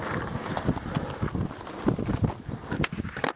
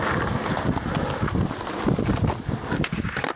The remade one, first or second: first